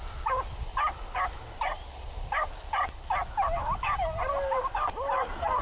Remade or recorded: recorded